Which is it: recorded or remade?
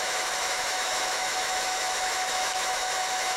remade